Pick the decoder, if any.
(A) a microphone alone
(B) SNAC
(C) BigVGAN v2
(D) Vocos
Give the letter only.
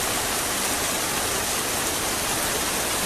A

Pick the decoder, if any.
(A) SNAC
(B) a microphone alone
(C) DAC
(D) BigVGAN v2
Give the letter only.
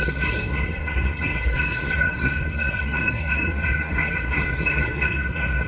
A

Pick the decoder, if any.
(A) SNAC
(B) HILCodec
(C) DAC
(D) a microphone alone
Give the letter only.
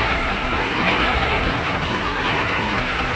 A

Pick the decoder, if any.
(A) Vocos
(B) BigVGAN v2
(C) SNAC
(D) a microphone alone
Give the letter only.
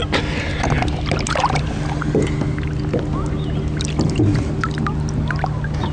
D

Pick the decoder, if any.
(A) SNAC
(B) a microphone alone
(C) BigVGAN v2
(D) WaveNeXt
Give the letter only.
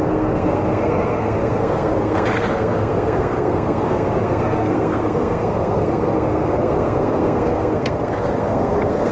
A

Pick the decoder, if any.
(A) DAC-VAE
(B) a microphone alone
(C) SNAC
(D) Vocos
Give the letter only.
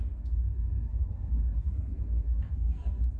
C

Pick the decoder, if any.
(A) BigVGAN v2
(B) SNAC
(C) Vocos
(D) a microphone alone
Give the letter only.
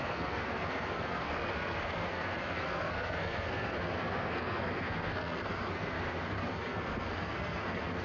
B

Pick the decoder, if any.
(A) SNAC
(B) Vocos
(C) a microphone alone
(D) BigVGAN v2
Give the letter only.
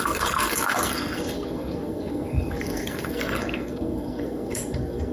A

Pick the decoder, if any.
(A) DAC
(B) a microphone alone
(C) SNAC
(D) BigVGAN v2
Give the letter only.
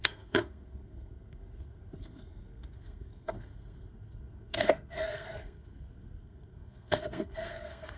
C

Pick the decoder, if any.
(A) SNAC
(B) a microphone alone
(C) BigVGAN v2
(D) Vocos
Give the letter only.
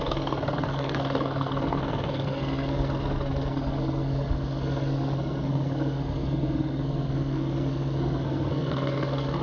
A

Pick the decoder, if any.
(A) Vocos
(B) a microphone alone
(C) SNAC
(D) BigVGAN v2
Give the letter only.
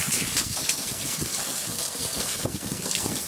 C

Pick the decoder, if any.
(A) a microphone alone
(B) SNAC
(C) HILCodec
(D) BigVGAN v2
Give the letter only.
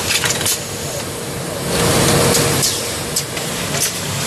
A